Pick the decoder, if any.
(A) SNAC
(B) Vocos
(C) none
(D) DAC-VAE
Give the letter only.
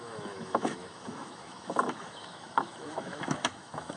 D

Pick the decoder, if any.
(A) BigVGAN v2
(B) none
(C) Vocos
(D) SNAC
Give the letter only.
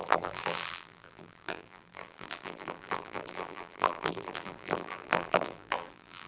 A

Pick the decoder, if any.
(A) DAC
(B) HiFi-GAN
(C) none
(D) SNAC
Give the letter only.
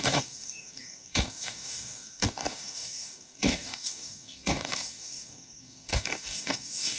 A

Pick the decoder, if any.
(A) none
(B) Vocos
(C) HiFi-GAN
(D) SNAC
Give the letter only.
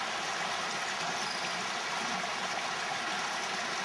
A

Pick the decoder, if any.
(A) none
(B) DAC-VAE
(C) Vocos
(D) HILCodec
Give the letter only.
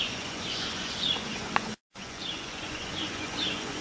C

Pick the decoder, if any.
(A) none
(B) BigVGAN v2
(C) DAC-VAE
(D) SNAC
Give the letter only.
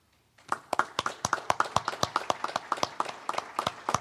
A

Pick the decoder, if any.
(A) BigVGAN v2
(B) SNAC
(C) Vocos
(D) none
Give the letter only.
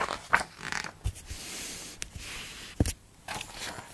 D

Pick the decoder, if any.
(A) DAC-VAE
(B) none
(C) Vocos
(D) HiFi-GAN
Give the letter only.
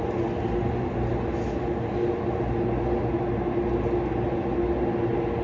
B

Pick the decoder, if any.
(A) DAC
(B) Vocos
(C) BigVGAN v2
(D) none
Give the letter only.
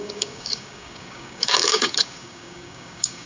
A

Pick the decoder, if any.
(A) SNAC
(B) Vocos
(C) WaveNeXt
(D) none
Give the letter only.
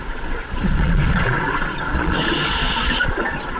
B